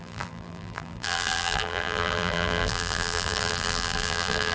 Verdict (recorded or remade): remade